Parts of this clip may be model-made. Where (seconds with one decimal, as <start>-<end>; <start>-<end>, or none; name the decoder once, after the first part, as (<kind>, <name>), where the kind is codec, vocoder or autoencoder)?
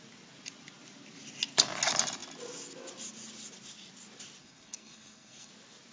4.4-5.5 (codec, SNAC)